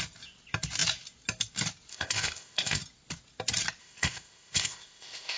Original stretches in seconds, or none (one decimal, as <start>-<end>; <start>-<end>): 0.0-1.9; 2.8-3.8